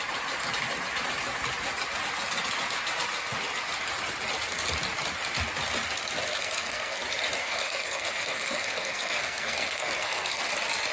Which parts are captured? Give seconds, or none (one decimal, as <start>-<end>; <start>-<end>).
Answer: 0.0-6.3; 7.0-7.4; 10.5-10.9